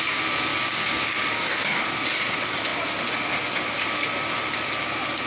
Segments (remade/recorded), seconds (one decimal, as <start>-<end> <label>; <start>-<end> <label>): 0.0-0.5 recorded; 0.5-1.8 remade; 1.8-5.3 recorded